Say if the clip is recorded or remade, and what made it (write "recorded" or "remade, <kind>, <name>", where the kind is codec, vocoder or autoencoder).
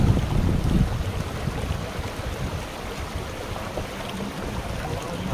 recorded